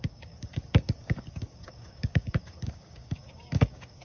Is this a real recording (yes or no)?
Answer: no